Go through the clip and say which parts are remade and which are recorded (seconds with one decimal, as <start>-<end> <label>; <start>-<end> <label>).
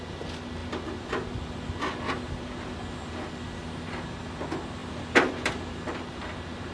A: 0.0-4.8 recorded; 4.8-6.2 remade; 6.2-6.7 recorded